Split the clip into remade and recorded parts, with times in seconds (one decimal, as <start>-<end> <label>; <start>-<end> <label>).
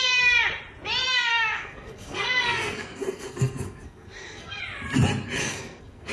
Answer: 0.0-1.3 recorded; 1.3-4.6 remade; 4.6-5.4 recorded; 5.4-6.1 remade